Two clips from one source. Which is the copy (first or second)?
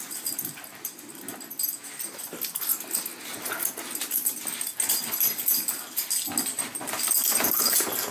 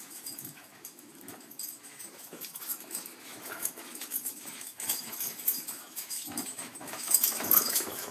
second